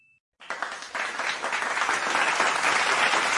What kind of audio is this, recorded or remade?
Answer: recorded